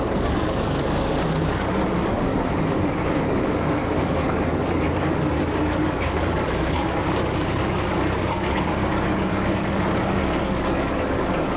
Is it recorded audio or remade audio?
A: remade